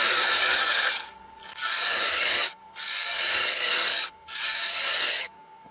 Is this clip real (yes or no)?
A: no